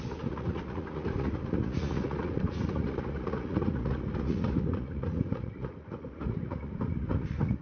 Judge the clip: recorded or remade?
remade